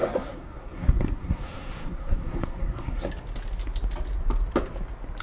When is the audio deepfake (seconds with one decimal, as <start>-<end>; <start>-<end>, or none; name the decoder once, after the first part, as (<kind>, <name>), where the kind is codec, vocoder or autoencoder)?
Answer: 0.0-3.1 (codec, SNAC)